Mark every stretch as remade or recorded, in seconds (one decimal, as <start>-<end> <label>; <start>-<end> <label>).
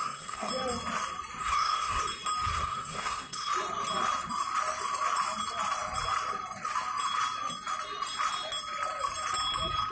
0.0-0.5 remade; 0.5-1.4 recorded; 1.4-2.0 remade; 2.0-2.5 recorded; 2.5-3.5 remade; 3.5-9.9 recorded